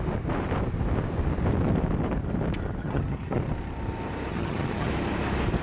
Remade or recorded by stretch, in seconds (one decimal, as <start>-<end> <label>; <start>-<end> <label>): 0.0-2.8 recorded; 2.8-3.4 remade; 3.4-4.3 recorded; 4.3-4.9 remade; 4.9-5.6 recorded